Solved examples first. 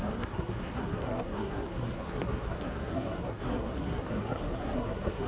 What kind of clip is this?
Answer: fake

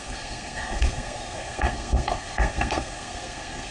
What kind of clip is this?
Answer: fake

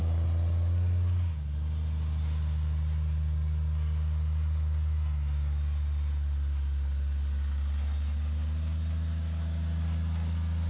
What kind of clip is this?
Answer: real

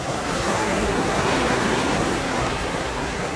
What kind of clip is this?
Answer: fake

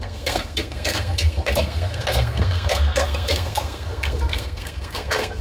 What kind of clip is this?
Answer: fake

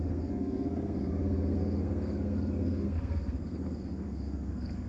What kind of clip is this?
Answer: fake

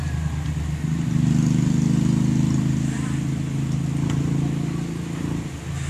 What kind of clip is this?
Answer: real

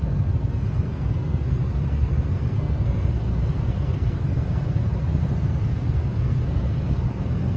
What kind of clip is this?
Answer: fake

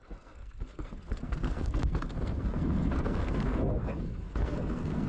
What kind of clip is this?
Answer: fake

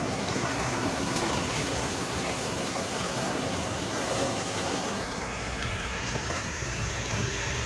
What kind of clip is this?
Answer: fake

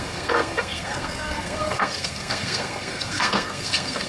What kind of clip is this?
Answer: fake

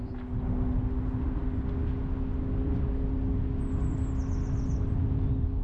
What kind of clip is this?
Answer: real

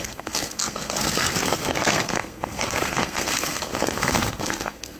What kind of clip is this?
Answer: fake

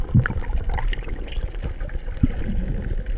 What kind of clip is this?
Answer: real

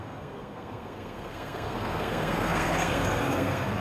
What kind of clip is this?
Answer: fake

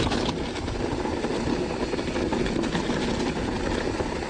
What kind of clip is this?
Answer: real